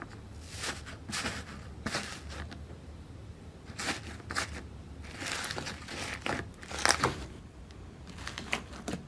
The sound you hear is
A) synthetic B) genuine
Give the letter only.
B